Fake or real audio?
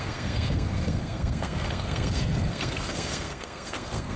fake